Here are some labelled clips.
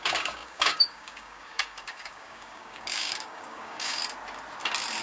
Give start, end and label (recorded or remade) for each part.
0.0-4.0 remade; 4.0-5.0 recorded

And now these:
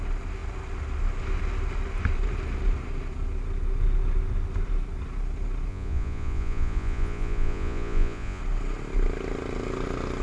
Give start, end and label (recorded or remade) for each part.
0.0-5.7 recorded; 5.7-8.4 remade; 8.4-10.2 recorded

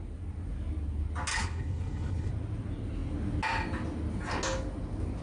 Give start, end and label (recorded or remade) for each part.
0.0-1.3 recorded; 1.3-2.3 remade; 2.3-5.2 recorded

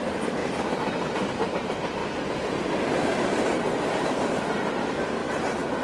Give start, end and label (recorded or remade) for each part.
0.0-2.0 remade; 2.0-2.8 recorded; 2.8-5.8 remade

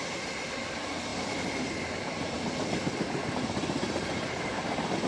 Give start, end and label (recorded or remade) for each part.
0.0-5.1 recorded

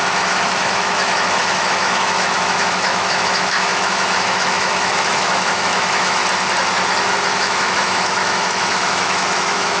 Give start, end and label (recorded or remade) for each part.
0.0-6.2 remade; 6.2-7.4 recorded; 7.4-9.8 remade